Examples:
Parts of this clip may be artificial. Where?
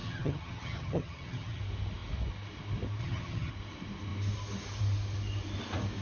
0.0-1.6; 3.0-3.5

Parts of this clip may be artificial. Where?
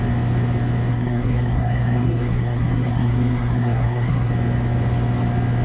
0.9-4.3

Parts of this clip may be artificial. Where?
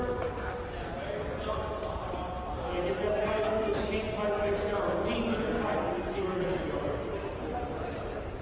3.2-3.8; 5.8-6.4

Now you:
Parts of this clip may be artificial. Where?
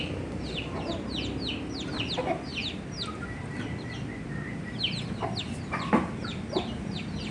none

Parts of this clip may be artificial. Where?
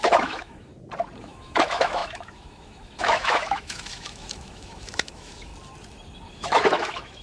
0.0-0.7; 1.2-5.5; 6.3-7.2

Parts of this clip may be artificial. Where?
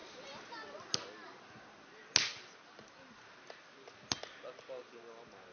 none